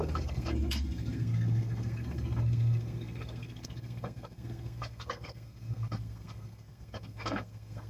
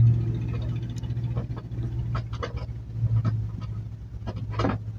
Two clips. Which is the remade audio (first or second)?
first